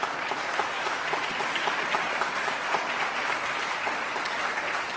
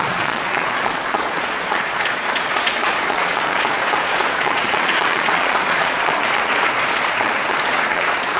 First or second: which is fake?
second